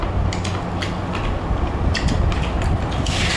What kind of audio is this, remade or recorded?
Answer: recorded